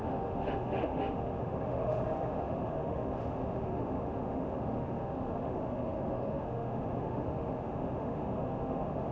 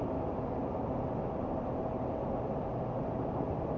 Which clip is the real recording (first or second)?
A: second